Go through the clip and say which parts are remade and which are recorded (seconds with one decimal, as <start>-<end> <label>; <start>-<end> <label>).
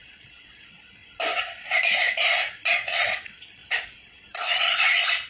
0.0-1.0 remade; 1.0-2.7 recorded; 2.7-5.3 remade